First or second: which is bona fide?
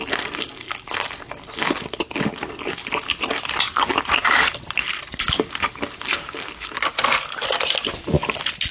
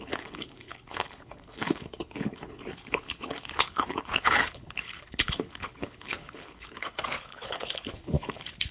first